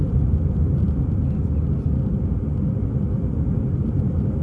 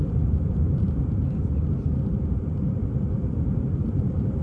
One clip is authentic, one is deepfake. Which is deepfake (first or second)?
second